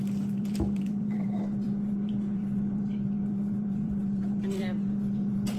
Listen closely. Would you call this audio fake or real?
fake